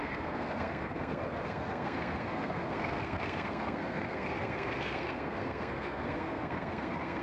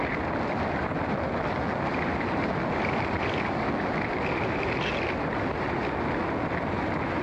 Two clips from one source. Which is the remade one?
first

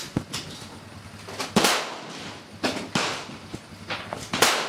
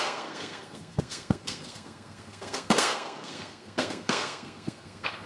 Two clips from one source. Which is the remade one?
second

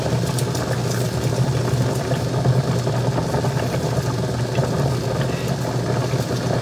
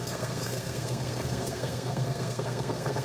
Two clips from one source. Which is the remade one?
second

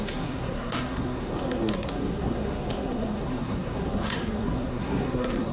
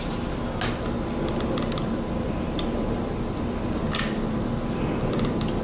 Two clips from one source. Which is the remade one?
first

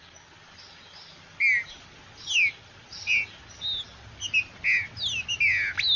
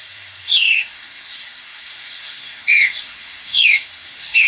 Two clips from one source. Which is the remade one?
second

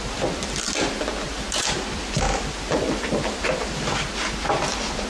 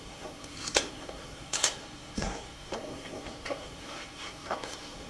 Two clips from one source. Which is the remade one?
second